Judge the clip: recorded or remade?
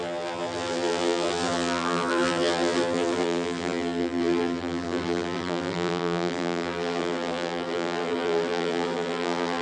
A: remade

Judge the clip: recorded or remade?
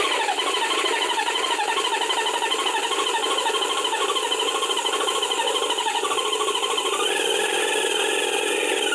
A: recorded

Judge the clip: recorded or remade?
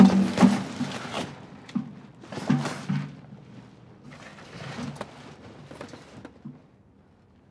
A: recorded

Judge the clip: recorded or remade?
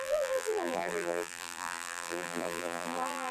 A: remade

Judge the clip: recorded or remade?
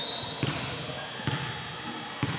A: recorded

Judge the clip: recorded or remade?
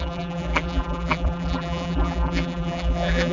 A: remade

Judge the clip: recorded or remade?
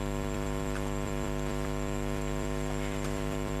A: remade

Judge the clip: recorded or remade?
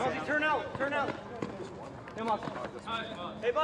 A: recorded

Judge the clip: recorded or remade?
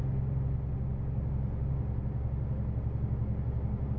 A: recorded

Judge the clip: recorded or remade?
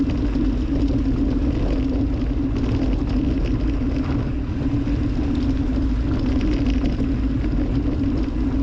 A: recorded